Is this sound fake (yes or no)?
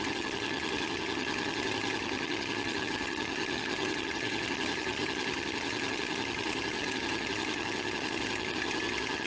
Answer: yes